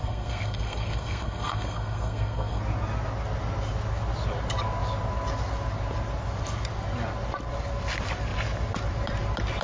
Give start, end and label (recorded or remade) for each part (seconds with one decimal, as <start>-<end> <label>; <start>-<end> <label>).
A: 0.0-2.6 remade; 2.6-9.6 recorded

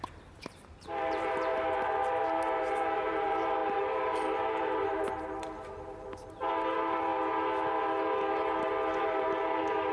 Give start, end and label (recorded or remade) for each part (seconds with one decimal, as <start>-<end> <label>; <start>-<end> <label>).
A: 0.0-7.1 remade; 7.1-9.0 recorded; 9.0-9.9 remade

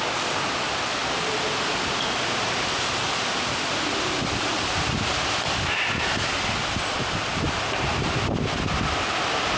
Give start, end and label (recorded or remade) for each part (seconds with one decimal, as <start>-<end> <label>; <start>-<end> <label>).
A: 0.0-7.3 remade; 7.3-7.9 recorded; 7.9-9.6 remade

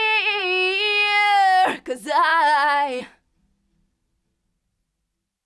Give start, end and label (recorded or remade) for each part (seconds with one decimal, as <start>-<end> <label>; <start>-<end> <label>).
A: 0.0-5.5 recorded

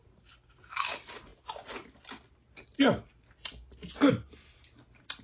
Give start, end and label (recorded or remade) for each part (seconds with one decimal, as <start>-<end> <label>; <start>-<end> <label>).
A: 0.0-5.2 recorded